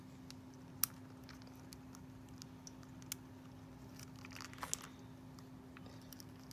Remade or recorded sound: recorded